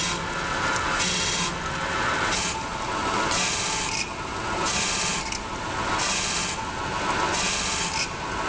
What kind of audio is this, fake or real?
real